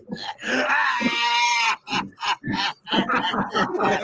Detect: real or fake real